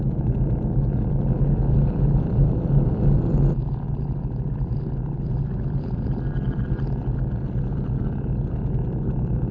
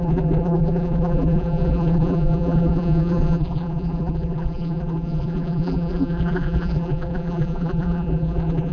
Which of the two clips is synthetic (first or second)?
second